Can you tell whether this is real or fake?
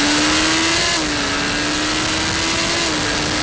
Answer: real